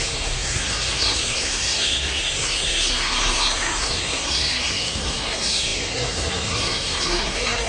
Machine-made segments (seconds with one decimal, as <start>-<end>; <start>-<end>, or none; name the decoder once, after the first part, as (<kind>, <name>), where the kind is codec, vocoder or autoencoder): 0.0-7.7 (codec, SNAC)